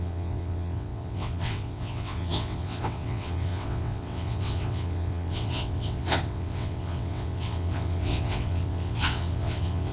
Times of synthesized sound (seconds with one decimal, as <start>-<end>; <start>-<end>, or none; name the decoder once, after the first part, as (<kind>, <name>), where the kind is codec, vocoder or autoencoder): 0.0-9.9 (vocoder, WaveNeXt)